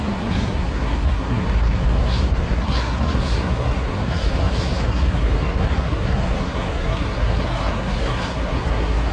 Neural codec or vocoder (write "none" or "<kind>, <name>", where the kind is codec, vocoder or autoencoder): codec, SNAC